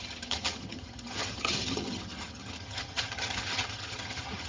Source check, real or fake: fake